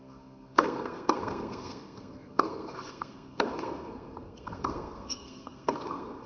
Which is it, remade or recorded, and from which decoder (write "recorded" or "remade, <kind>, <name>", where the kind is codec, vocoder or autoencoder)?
remade, codec, SNAC